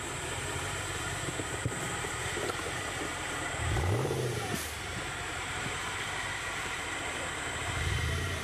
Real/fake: fake